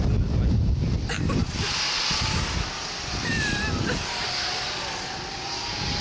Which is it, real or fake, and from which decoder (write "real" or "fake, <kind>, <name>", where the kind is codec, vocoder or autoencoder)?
real